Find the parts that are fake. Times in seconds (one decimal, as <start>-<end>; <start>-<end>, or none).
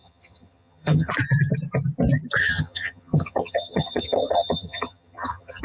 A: 0.0-1.1; 2.4-5.6